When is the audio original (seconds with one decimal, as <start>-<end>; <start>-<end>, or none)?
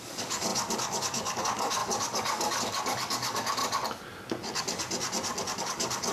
3.6-5.6